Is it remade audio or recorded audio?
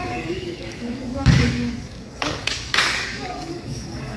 remade